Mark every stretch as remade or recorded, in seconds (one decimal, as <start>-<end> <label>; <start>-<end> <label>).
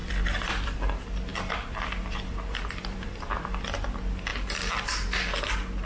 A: 0.0-0.8 remade; 0.8-1.3 recorded; 1.3-3.6 remade; 3.6-5.9 recorded